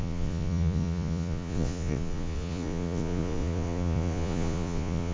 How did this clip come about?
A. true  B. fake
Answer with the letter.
B